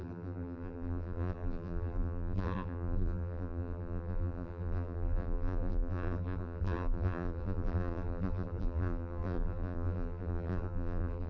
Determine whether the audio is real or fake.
fake